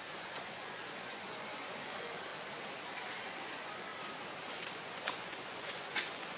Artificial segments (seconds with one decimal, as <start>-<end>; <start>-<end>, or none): 0.0-2.3; 3.2-3.9; 4.5-6.4

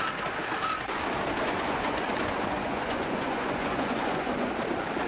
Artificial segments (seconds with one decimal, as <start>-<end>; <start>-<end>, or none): 1.4-4.5

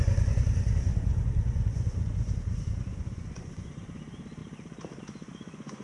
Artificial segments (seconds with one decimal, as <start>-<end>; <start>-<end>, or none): 0.0-4.4; 5.0-5.8

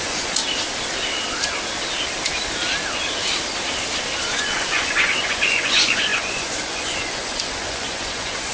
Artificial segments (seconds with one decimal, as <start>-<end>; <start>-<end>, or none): 0.0-0.4; 4.2-8.5